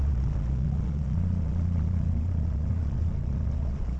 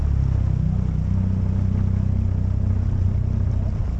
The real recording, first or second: second